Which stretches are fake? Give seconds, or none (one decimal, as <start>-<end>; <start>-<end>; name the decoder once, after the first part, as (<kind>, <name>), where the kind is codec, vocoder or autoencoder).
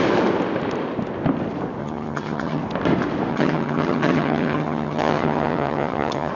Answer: 1.8-2.6 (vocoder, HiFi-GAN); 3.3-6.3